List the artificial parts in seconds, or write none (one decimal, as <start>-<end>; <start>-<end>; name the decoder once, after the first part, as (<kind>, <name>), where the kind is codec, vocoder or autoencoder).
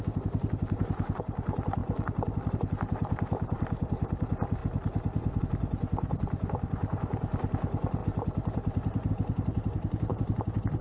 0.0-1.8 (vocoder, BigVGAN v2); 2.5-4.6; 5.4-10.8